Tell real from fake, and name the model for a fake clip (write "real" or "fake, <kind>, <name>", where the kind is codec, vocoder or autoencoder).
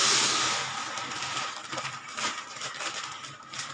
real